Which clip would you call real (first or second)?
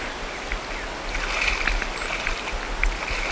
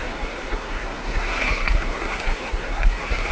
first